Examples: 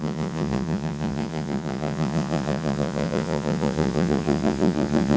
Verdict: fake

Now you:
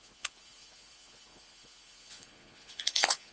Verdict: fake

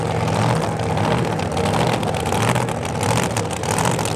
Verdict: real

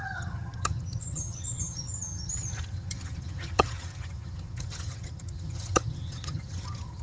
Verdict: fake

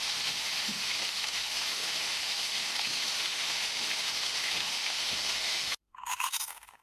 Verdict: fake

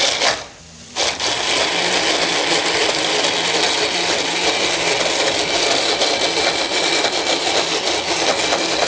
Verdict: real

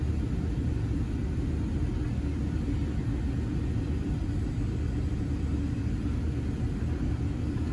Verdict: real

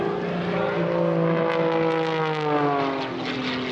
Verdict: real